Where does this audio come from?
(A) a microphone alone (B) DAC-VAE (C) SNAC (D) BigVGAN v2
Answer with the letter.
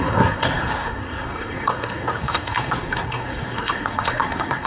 C